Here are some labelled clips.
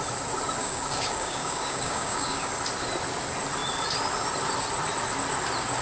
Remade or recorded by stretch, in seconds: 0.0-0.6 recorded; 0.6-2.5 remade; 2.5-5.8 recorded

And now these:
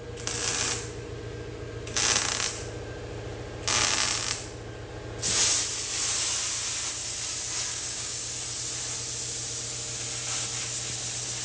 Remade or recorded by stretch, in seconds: 0.0-7.7 recorded; 7.7-8.3 remade; 8.3-11.4 recorded

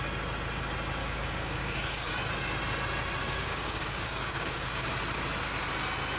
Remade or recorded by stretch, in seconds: 0.0-1.0 recorded; 1.0-2.1 remade; 2.1-3.2 recorded; 3.2-4.9 remade; 4.9-6.2 recorded

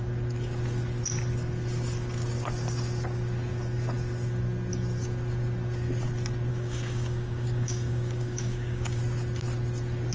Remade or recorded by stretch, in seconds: 0.0-6.5 recorded; 6.5-9.0 remade; 9.0-10.1 recorded